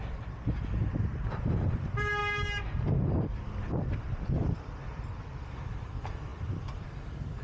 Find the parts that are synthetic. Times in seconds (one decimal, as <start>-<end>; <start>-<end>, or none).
none